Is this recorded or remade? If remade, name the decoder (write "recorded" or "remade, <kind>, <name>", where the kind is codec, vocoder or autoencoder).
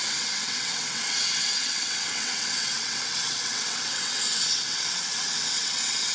remade, vocoder, WaveNeXt